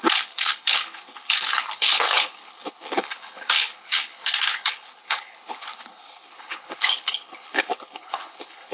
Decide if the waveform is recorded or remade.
remade